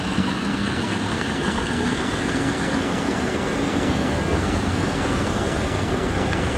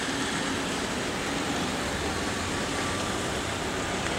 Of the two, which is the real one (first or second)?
second